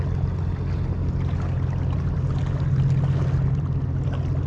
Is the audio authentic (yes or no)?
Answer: yes